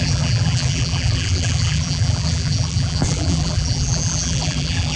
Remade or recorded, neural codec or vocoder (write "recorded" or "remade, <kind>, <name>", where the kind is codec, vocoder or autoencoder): remade, vocoder, BigVGAN v2